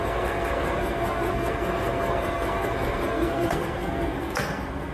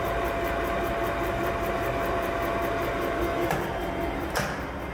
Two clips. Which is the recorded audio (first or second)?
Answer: second